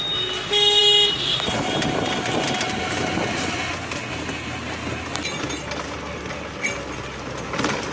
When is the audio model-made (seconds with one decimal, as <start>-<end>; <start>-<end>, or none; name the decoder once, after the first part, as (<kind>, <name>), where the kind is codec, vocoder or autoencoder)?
none